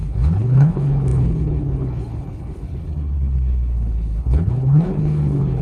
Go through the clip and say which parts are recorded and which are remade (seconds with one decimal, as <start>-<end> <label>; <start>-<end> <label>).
0.0-5.6 remade